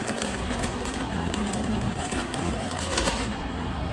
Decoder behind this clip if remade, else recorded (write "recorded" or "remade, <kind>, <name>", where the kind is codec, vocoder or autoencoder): remade, codec, SNAC